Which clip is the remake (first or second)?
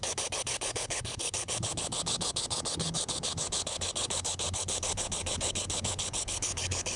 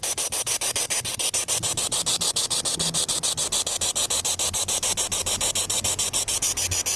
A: first